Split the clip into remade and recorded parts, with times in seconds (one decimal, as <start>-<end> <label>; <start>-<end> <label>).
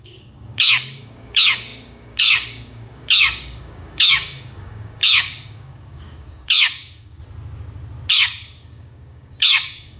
0.0-7.2 remade; 7.2-8.1 recorded; 8.1-10.0 remade